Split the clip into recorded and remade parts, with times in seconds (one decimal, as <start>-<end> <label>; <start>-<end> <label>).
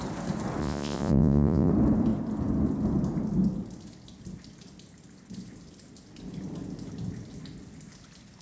0.0-0.6 recorded; 0.6-1.7 remade; 1.7-8.4 recorded